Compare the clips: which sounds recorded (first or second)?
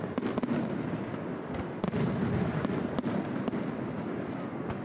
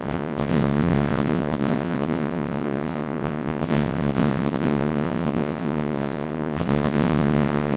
first